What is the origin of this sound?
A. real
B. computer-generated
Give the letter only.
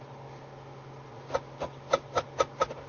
A